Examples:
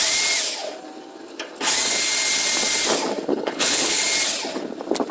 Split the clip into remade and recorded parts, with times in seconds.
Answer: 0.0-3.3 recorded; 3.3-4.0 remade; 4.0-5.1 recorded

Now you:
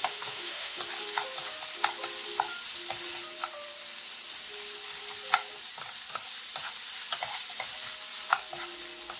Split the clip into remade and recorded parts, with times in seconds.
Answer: 0.0-0.8 remade; 0.8-9.2 recorded

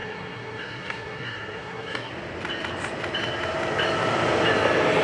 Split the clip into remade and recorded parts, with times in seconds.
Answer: 0.0-2.1 remade; 2.1-5.0 recorded

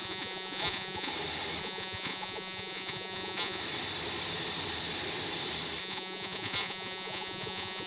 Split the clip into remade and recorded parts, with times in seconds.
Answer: 0.0-1.1 remade; 1.1-1.6 recorded; 1.6-3.6 remade; 3.6-5.8 recorded; 5.8-7.9 remade